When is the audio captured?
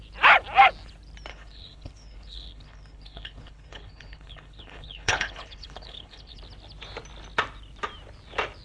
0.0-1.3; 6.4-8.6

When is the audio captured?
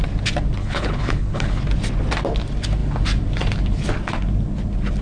0.0-0.6; 1.6-5.0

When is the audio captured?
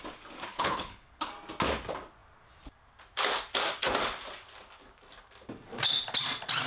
0.0-0.5; 1.3-6.7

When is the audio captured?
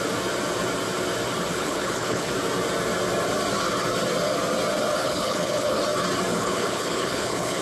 0.0-1.5; 2.3-5.0; 5.8-6.3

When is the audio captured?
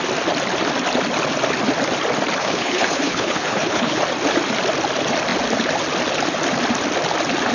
0.0-2.4; 4.0-7.5